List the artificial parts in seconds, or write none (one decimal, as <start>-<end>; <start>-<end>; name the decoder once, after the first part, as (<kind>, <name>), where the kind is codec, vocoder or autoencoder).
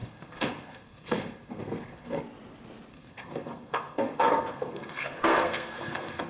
0.0-2.2 (codec, SNAC); 2.9-6.3